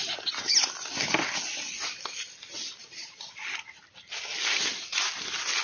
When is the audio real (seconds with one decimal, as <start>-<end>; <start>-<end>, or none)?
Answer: 0.0-5.6